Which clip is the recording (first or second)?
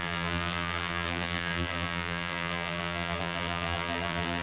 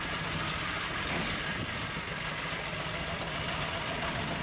second